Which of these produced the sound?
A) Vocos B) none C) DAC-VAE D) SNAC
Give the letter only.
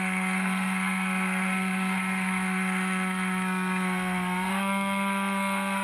D